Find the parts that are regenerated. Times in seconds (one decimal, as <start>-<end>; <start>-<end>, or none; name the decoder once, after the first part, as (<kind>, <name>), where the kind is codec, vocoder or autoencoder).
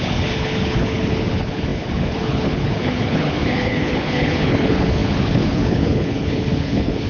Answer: 0.0-7.1 (codec, HILCodec)